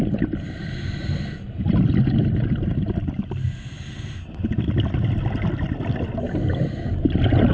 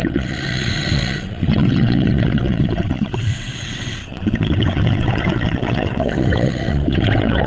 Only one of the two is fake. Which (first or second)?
second